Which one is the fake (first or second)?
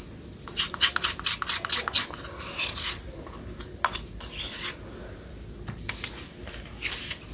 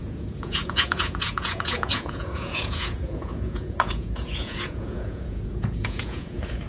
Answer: second